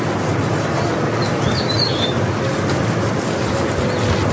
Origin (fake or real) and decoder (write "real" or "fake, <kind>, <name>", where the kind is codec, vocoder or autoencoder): real